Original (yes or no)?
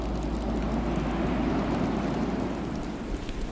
yes